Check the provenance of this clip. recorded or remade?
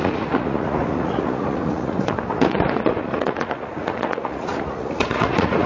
remade